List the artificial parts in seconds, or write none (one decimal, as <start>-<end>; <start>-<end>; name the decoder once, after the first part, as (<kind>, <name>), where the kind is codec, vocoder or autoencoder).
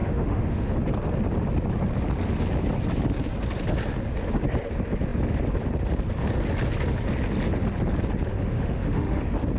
0.0-0.7 (autoencoder, DAC-VAE); 8.3-9.2